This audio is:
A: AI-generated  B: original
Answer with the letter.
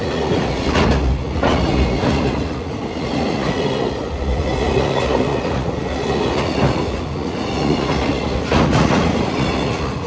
A